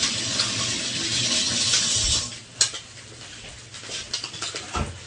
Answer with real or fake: real